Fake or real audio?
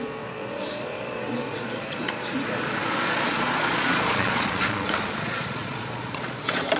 fake